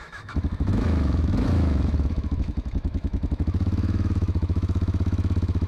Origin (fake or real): fake